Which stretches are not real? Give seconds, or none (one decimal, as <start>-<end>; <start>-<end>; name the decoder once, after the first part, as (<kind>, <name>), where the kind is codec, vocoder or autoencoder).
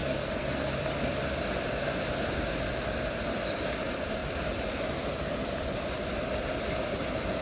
0.0-0.7 (codec, SNAC)